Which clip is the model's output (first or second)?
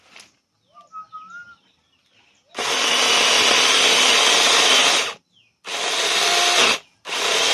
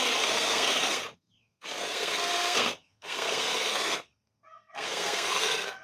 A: second